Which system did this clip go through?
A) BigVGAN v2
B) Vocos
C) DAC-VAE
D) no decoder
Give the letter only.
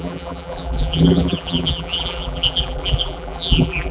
A